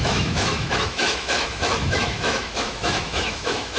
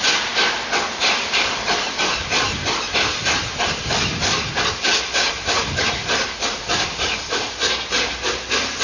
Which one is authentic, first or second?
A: second